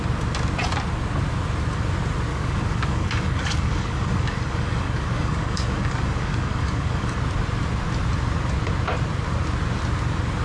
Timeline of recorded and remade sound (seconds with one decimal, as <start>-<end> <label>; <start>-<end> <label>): 0.0-2.3 recorded; 2.3-7.2 remade; 7.2-10.4 recorded